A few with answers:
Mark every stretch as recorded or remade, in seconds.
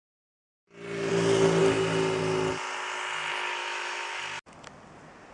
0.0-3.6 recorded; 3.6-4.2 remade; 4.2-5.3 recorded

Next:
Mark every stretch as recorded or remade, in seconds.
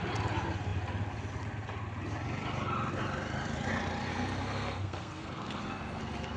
0.0-4.1 recorded; 4.1-6.0 remade; 6.0-6.4 recorded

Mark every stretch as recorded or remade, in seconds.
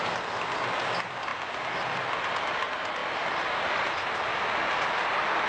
0.0-1.3 recorded; 1.3-1.9 remade; 1.9-5.5 recorded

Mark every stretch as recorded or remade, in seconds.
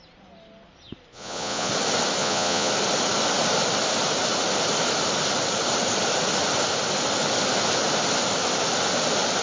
0.0-1.1 recorded; 1.1-1.7 remade; 1.7-2.2 recorded; 2.2-2.7 remade; 2.7-9.4 recorded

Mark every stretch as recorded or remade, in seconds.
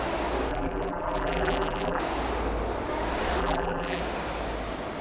0.0-0.5 recorded; 0.5-2.0 remade; 2.0-3.4 recorded; 3.4-4.0 remade; 4.0-5.0 recorded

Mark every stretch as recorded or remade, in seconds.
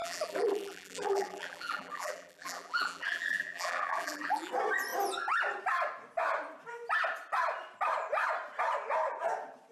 0.0-4.5 remade; 4.5-9.7 recorded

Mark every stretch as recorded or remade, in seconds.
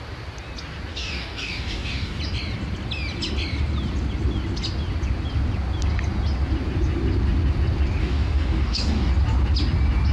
0.0-0.9 recorded; 0.9-2.2 remade; 2.2-8.0 recorded; 8.0-9.1 remade; 9.1-10.1 recorded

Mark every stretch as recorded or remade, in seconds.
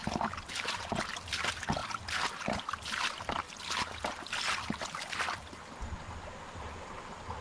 0.0-0.8 remade; 0.8-7.4 recorded